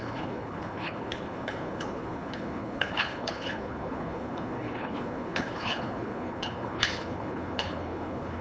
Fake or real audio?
fake